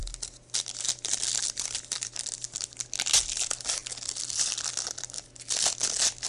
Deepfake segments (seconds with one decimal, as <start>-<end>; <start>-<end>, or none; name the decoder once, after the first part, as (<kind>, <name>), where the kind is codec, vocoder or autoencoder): none